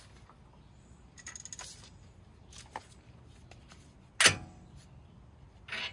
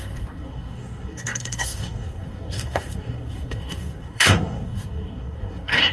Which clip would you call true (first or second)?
first